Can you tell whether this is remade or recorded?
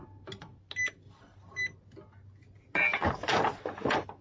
recorded